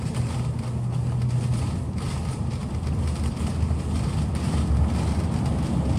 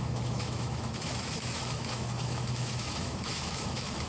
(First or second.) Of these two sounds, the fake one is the second